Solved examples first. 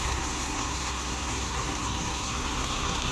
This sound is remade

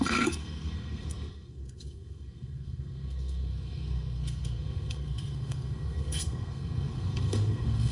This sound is remade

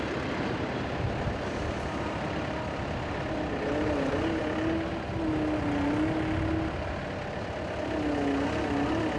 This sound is recorded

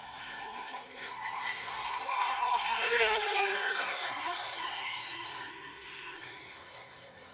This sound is remade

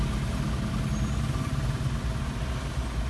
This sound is recorded